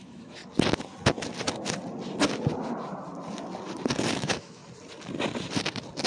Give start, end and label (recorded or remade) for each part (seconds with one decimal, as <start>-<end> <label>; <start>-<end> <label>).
0.0-0.4 remade; 0.4-4.1 recorded; 4.1-4.6 remade; 4.6-6.1 recorded